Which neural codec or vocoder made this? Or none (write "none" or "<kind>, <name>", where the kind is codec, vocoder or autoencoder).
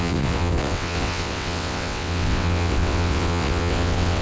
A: vocoder, WaveNeXt